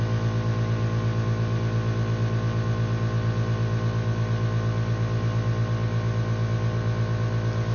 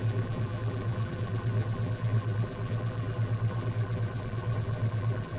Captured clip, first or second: first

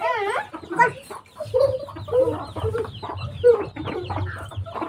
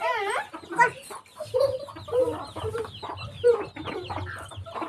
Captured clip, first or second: second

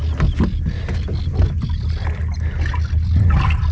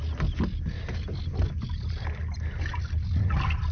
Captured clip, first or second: first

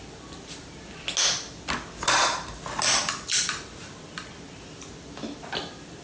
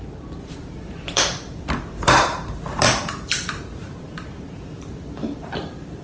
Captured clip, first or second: first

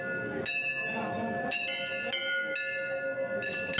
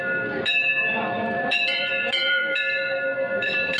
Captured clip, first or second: first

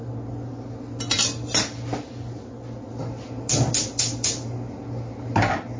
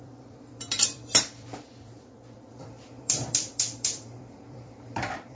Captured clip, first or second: first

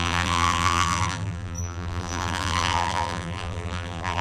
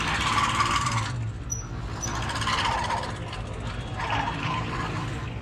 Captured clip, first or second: second